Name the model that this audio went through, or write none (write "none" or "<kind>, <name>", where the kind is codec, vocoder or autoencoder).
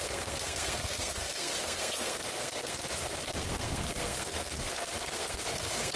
codec, SNAC